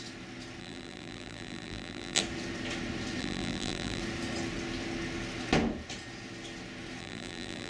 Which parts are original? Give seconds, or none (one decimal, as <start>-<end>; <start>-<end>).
0.0-0.6; 2.2-3.2; 4.0-7.0